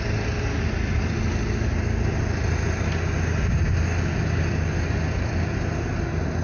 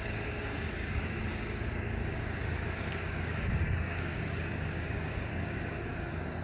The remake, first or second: second